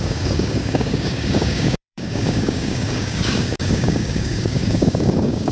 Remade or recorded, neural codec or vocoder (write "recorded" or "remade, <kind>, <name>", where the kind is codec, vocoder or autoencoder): remade, codec, DAC